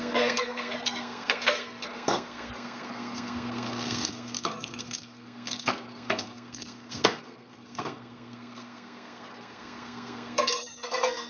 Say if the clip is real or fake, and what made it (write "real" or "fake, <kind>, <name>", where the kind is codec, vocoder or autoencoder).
fake, codec, SNAC